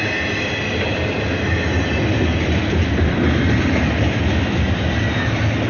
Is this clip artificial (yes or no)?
no